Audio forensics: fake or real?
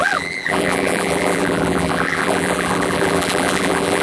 fake